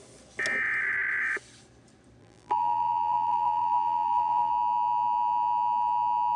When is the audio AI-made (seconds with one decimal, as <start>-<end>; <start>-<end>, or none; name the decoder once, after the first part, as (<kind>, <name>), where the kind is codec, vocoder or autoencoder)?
2.2-4.5 (vocoder, BigVGAN v2)